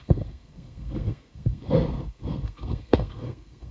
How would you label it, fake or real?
fake